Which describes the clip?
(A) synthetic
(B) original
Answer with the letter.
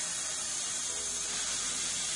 B